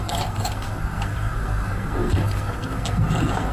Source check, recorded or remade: remade